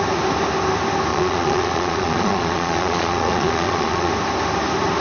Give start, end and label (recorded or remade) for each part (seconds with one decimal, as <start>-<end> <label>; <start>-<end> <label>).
0.0-1.1 recorded; 1.1-4.1 remade; 4.1-5.0 recorded

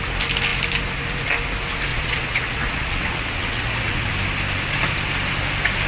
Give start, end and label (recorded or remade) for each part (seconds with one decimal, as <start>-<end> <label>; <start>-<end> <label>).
0.0-1.9 recorded; 1.9-4.1 remade; 4.1-5.9 recorded

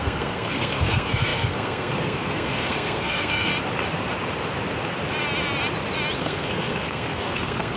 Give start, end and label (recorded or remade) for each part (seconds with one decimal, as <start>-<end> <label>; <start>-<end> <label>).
0.0-3.5 remade; 3.5-6.2 recorded; 6.2-7.8 remade